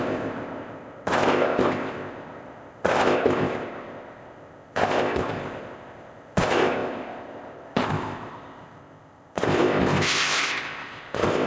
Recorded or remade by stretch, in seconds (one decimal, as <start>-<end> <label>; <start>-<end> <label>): 0.0-11.5 remade